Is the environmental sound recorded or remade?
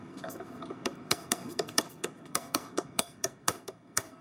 remade